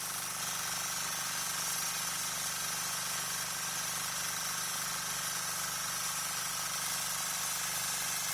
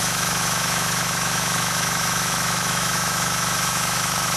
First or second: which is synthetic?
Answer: second